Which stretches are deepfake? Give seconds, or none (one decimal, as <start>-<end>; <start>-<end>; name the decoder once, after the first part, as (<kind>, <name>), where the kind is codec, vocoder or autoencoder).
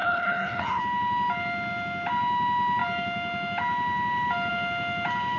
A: 0.0-0.8 (codec, HILCodec)